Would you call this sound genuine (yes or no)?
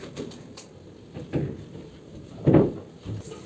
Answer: no